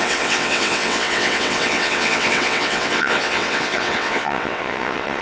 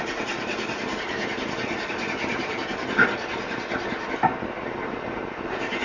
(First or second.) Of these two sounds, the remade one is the first